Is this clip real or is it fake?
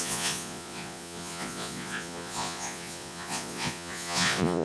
fake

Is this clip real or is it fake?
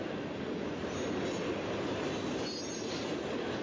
real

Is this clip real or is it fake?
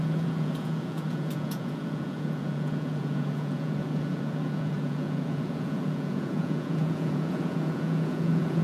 fake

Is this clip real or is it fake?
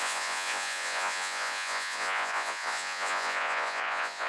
fake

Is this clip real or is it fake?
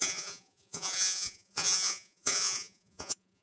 fake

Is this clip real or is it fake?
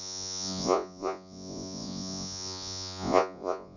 fake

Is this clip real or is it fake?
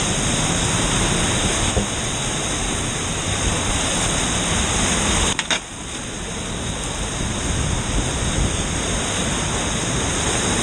real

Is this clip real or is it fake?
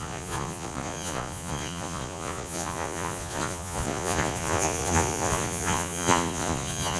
fake